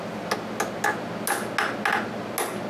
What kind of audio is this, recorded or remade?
recorded